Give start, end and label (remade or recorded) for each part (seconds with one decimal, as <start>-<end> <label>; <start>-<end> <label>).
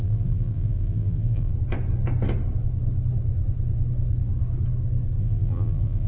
0.0-1.5 remade; 1.5-5.2 recorded; 5.2-6.1 remade